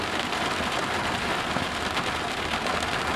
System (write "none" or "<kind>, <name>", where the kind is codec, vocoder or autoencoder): none